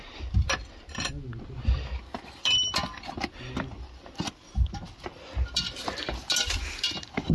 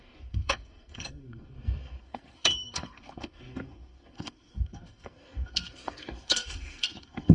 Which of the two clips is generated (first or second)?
second